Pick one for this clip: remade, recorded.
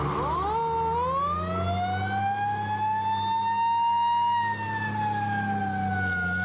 recorded